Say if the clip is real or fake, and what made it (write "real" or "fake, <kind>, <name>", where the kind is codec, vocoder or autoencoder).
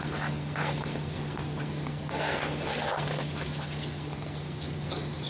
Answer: fake, codec, SNAC